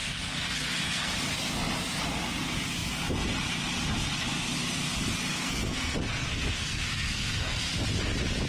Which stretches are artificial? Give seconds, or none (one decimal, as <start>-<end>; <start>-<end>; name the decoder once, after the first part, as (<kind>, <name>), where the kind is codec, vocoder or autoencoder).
0.0-1.1 (codec, SNAC); 5.3-7.6